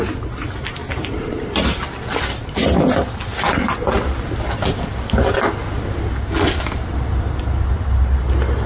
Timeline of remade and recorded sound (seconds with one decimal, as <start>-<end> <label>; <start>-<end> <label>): 0.0-8.7 recorded